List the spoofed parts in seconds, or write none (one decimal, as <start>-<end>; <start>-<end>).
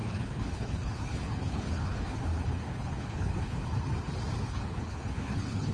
0.0-3.7; 4.4-5.7